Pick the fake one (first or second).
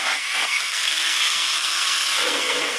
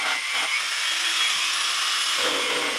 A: first